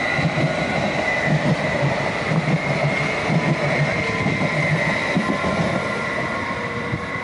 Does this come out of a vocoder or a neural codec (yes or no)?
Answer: no